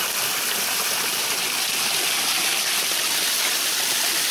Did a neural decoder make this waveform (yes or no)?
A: no